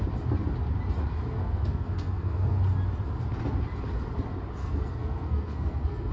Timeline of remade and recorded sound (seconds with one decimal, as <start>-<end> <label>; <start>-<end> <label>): 0.0-1.4 recorded; 1.4-2.6 remade; 2.6-4.6 recorded; 4.6-6.1 remade